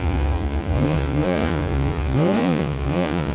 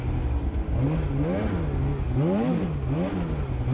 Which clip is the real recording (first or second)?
second